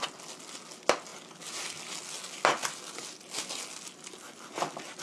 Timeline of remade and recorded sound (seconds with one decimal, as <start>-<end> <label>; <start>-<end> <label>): 0.0-5.0 recorded